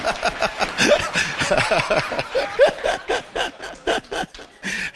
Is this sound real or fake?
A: fake